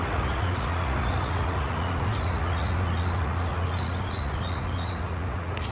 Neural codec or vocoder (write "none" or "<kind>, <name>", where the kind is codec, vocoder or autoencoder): vocoder, Vocos